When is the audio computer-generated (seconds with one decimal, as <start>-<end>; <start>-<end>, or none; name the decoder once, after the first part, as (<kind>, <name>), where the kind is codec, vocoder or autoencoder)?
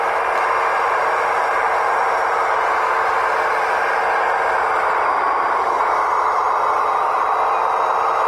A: 0.7-2.7 (vocoder, BigVGAN v2)